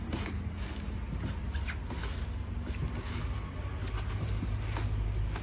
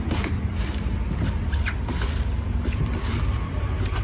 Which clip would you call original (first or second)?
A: first